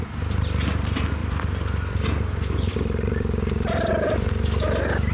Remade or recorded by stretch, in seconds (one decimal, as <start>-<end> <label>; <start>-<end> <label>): 0.0-1.2 recorded; 1.2-4.3 remade; 4.3-5.1 recorded

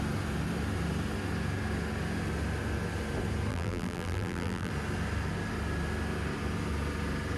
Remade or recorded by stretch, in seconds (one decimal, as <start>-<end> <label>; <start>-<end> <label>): 0.0-3.5 recorded; 3.5-4.7 remade; 4.7-7.4 recorded

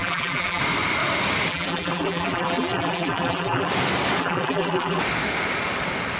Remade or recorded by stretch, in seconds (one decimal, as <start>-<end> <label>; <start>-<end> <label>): 0.0-0.6 remade; 0.6-1.5 recorded; 1.5-3.7 remade; 3.7-4.2 recorded; 4.2-5.0 remade; 5.0-6.2 recorded

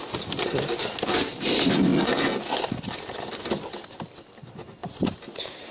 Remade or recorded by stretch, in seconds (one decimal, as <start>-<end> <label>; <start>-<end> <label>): 0.0-4.8 recorded; 4.8-5.7 remade

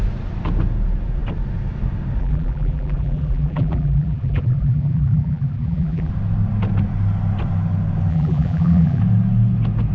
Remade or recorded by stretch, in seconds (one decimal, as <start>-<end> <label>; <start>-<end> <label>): 0.0-2.2 recorded; 2.2-6.1 remade; 6.1-8.1 recorded; 8.1-9.0 remade; 9.0-9.9 recorded

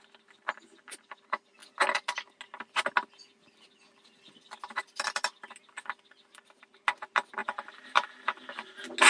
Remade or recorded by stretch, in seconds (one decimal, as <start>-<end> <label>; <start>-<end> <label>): 0.0-9.1 recorded

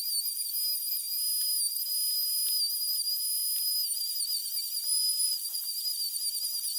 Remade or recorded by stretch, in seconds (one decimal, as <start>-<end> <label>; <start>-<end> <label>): 0.0-4.4 recorded; 4.4-5.8 remade; 5.8-6.8 recorded